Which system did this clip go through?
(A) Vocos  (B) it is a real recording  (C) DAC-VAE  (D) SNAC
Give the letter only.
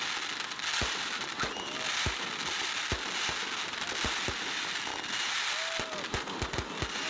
B